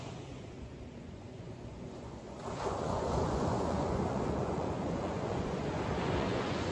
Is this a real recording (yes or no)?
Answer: no